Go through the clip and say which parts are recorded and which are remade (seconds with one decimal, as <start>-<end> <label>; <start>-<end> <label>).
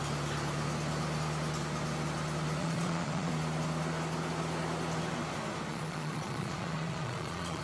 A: 0.0-2.6 recorded; 2.6-3.3 remade; 3.3-5.7 recorded; 5.7-7.6 remade